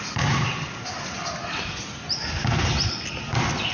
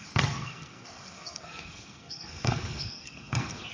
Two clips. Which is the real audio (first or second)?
first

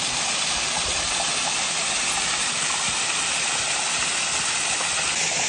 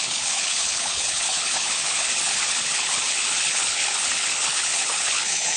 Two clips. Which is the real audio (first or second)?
first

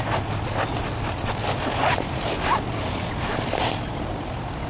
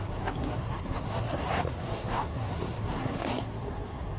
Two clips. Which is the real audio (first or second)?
first